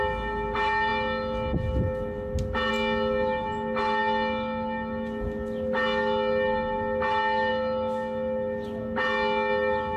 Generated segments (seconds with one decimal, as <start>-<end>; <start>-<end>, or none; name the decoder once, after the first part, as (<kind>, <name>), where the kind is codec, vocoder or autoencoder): none